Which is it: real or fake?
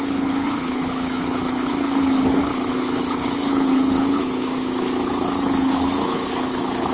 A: fake